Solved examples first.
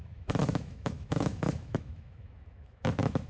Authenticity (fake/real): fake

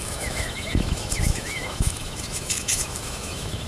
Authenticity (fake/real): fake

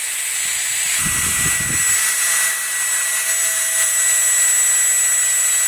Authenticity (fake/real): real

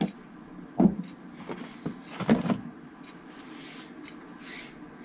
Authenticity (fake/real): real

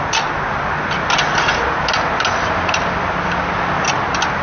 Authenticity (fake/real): real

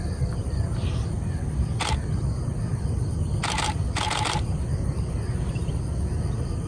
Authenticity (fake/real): real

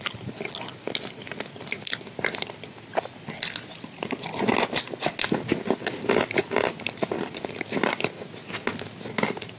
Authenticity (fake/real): real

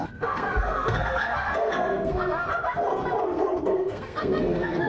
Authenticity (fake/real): fake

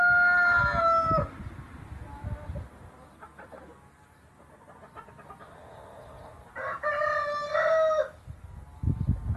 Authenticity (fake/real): real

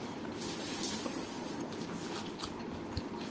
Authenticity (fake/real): real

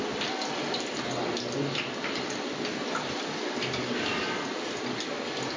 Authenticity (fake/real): real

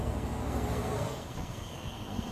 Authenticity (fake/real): fake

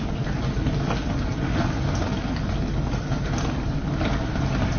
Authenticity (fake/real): real